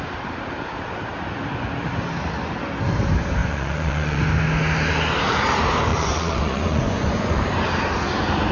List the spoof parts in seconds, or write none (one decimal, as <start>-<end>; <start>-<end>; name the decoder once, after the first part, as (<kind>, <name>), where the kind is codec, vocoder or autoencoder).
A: 3.4-4.2 (vocoder, Vocos); 5.9-7.4